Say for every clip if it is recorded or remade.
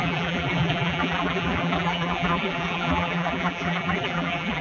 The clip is remade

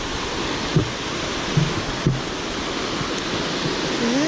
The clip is recorded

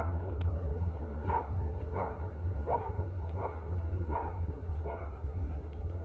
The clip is remade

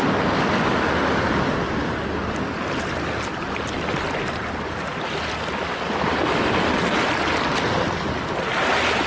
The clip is recorded